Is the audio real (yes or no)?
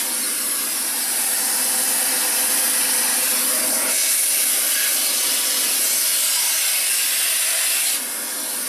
yes